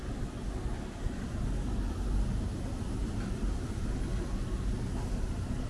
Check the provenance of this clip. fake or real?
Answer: real